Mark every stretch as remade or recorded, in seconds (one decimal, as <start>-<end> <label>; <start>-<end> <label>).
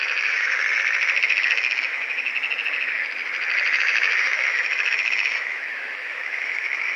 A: 0.0-0.6 remade; 0.6-1.2 recorded; 1.2-2.3 remade; 2.3-3.8 recorded; 3.8-7.0 remade